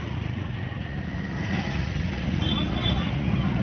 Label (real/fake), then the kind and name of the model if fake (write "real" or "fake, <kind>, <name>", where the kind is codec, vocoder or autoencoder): fake, vocoder, Vocos